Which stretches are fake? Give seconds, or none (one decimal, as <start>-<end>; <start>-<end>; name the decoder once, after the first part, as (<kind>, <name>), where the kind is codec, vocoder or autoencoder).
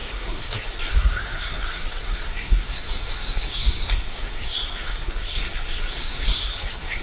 0.0-7.0 (codec, SNAC)